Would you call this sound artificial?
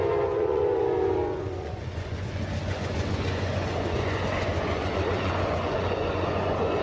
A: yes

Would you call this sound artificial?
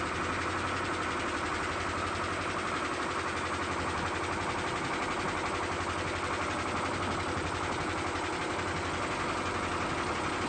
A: no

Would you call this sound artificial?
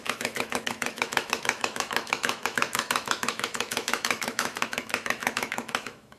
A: yes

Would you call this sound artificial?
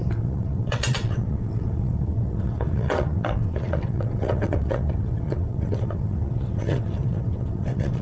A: yes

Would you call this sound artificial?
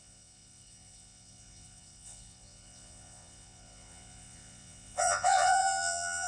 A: yes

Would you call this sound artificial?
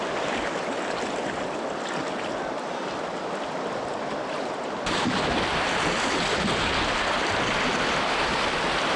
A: no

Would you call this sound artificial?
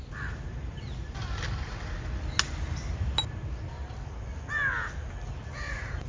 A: no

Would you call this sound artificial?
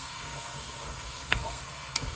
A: yes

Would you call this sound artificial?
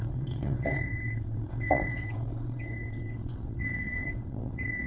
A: yes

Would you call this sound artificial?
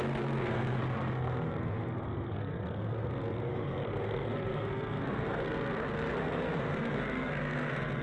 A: yes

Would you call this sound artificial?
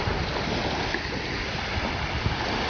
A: no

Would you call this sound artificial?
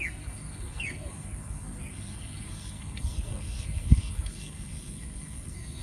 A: yes